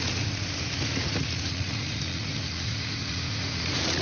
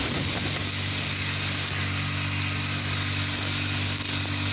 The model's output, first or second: first